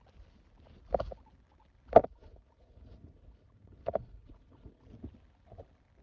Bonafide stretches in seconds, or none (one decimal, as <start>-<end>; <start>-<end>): 0.0-2.0; 4.8-6.0